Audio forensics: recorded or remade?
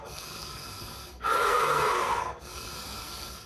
remade